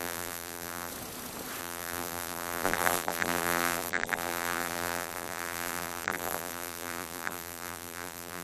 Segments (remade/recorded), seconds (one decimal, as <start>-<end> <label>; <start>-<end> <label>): 0.0-0.9 remade; 0.9-1.6 recorded; 1.6-8.4 remade